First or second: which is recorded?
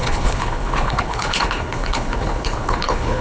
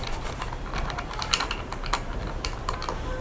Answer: second